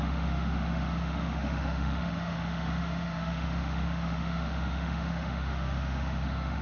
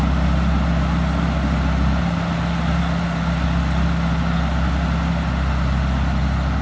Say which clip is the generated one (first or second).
first